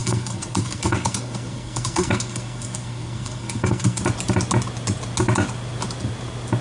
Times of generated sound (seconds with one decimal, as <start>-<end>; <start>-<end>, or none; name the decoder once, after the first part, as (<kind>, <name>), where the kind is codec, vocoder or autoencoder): 0.0-4.0 (codec, SNAC)